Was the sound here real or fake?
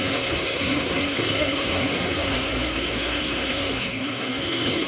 fake